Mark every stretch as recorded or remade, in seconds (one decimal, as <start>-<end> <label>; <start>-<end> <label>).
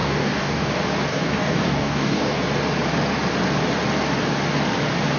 0.0-0.7 remade; 0.7-1.1 recorded; 1.1-2.4 remade; 2.4-5.2 recorded